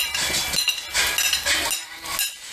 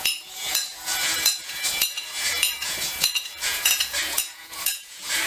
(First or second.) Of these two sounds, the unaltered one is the first